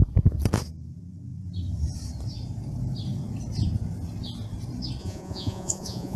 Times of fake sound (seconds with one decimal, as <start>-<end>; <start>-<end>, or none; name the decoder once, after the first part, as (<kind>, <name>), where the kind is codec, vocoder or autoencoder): 5.0-6.2 (vocoder, Vocos)